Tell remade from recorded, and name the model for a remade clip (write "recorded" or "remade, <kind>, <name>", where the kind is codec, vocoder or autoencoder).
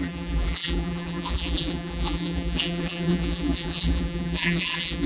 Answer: remade, vocoder, BigVGAN v2